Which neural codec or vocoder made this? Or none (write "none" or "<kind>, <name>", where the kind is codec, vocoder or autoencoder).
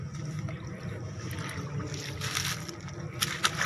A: none